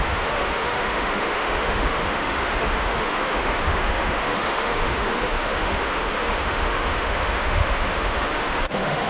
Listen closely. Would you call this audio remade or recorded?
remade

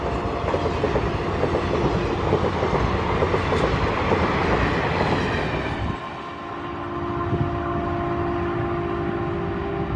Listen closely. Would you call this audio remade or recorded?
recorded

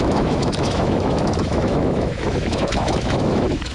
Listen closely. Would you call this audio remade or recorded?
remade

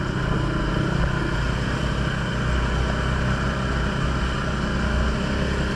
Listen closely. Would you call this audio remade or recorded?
recorded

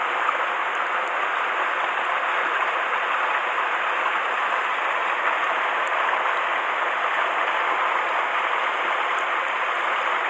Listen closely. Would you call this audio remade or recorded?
remade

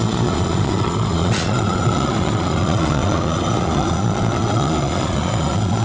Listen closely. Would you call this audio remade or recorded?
remade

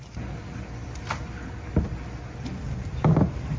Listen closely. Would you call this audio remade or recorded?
recorded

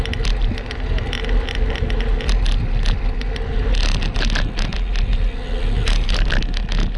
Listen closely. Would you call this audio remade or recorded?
recorded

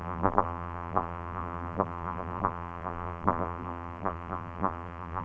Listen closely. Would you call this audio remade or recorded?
remade